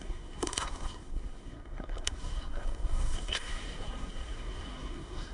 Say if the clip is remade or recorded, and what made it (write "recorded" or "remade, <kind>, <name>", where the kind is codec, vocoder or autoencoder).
remade, codec, SNAC